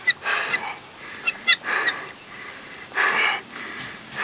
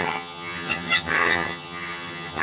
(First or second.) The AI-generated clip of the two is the second